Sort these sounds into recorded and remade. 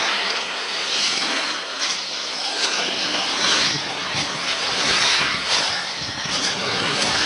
remade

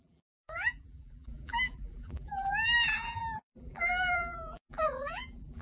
remade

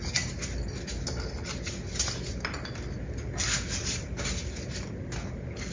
recorded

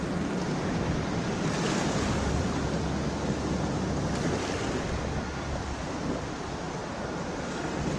recorded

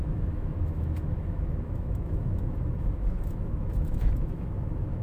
remade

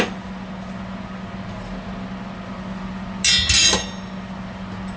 recorded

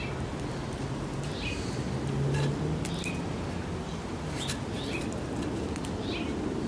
recorded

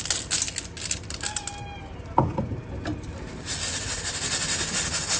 recorded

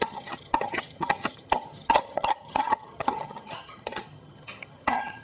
remade